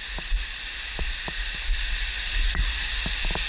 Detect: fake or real real